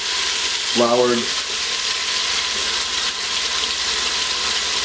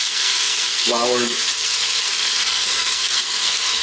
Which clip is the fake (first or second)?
second